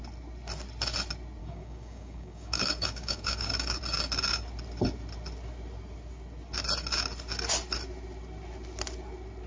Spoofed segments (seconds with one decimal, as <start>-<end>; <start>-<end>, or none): 1.4-3.8